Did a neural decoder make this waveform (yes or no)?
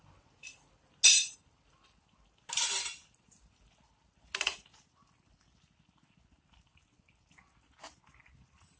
no